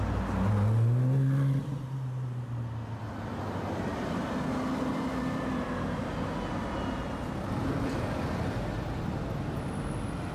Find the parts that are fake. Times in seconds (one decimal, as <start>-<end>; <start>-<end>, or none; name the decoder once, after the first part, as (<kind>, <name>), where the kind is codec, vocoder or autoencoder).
none